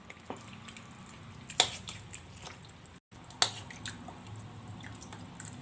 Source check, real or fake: real